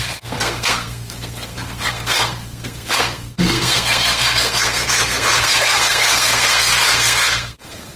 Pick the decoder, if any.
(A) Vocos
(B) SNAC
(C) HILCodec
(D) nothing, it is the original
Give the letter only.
B